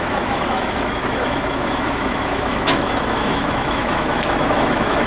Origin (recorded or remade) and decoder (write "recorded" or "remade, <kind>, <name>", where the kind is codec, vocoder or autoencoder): remade, autoencoder, DAC-VAE